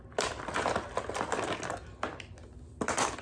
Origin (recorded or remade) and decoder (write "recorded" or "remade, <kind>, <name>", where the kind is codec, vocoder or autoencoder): recorded